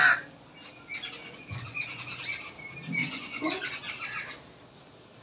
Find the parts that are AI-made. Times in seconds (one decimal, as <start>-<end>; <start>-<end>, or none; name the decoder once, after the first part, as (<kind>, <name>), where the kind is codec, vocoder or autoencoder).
1.2-2.0 (vocoder, Vocos); 3.0-3.7